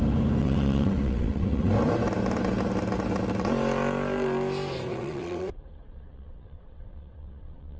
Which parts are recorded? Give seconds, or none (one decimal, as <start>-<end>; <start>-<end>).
0.0-0.4; 1.7-4.9